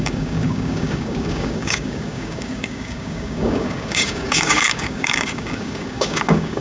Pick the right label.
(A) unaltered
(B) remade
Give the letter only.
B